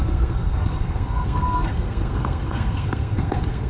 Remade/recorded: remade